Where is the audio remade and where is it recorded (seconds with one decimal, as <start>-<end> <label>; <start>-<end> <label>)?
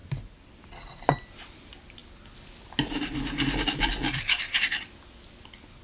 0.0-5.8 recorded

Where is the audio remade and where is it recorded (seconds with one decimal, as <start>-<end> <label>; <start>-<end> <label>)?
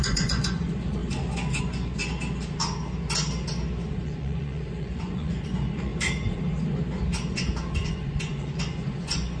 0.0-1.0 remade; 1.0-1.6 recorded; 1.6-2.0 remade; 2.0-3.9 recorded; 3.9-5.9 remade; 5.9-7.9 recorded; 7.9-9.4 remade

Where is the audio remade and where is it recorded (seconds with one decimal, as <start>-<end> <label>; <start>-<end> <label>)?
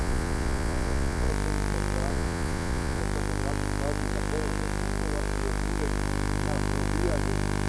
0.0-1.3 remade; 1.3-2.1 recorded; 2.1-3.0 remade; 3.0-7.7 recorded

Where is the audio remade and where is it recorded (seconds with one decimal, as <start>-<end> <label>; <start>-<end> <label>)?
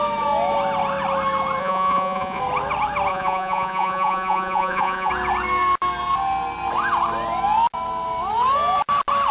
0.0-1.6 recorded; 1.6-2.4 remade; 2.4-3.1 recorded; 3.1-5.1 remade; 5.1-9.3 recorded